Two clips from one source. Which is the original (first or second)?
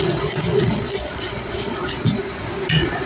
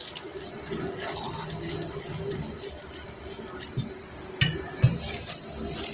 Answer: second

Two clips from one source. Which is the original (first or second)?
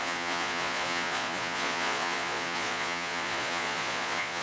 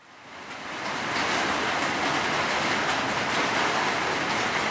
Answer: second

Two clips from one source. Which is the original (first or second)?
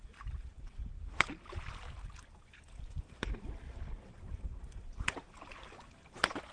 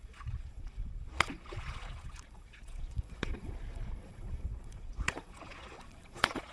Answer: first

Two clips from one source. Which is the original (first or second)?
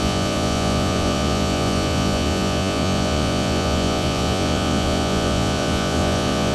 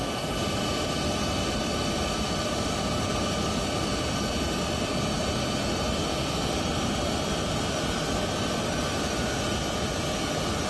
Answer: second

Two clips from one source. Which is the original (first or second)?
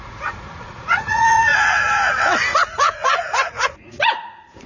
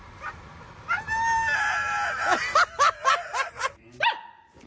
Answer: second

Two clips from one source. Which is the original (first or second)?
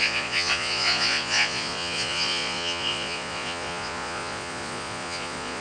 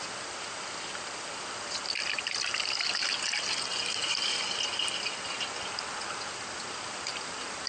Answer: second